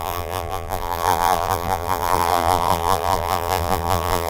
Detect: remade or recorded remade